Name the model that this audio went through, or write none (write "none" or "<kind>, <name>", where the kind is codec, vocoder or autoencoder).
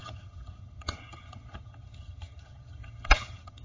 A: vocoder, HiFi-GAN